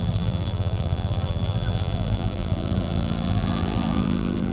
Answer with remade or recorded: remade